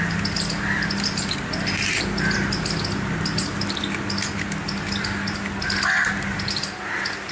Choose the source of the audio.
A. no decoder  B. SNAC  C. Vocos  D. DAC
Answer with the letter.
A